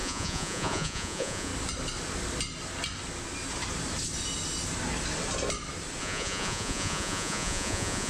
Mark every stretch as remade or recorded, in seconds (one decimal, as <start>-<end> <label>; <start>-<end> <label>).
0.0-1.5 remade; 1.5-6.0 recorded; 6.0-8.1 remade